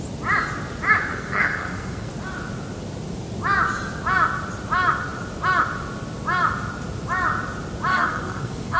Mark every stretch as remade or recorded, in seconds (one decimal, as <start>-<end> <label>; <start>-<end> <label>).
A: 0.0-1.1 recorded; 1.1-2.1 remade; 2.1-7.9 recorded; 7.9-8.8 remade

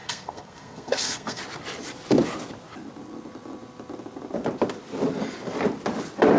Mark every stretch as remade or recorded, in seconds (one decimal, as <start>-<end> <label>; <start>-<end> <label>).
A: 0.0-1.4 remade; 1.4-6.4 recorded

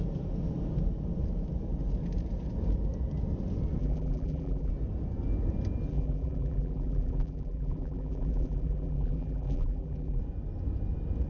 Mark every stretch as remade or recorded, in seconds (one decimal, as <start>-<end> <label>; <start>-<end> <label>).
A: 0.0-3.8 recorded; 3.8-4.7 remade; 4.7-5.9 recorded; 5.9-10.2 remade; 10.2-11.3 recorded

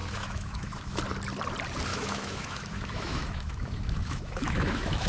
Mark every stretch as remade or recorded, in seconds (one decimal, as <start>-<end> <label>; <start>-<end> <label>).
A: 0.0-1.0 remade; 1.0-1.9 recorded; 1.9-5.1 remade

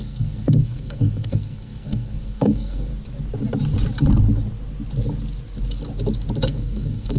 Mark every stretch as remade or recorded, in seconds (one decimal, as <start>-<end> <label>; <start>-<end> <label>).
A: 0.0-2.9 remade; 2.9-6.4 recorded; 6.4-7.2 remade

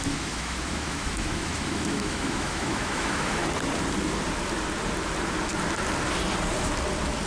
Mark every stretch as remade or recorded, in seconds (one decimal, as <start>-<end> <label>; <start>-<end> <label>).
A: 0.0-3.4 remade; 3.4-7.3 recorded